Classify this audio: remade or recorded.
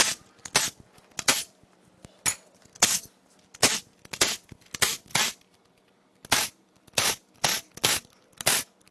recorded